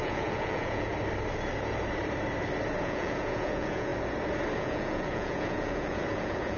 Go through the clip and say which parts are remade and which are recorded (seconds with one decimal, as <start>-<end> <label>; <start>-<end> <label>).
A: 0.0-0.9 remade; 0.9-2.8 recorded; 2.8-3.9 remade; 3.9-4.6 recorded; 4.6-6.6 remade